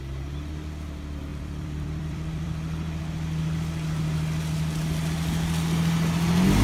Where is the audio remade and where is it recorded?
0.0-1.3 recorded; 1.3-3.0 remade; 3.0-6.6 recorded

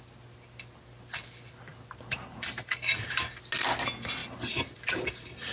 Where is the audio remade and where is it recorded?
0.0-1.7 recorded; 1.7-2.8 remade; 2.8-4.2 recorded; 4.2-5.5 remade